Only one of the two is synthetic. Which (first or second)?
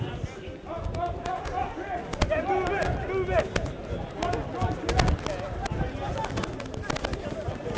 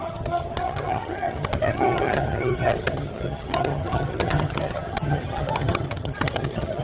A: second